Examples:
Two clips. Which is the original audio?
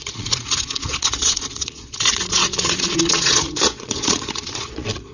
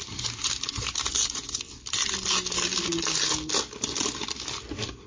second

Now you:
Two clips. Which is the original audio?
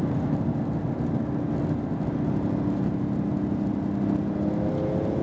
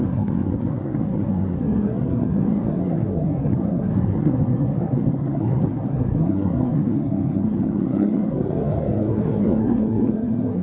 first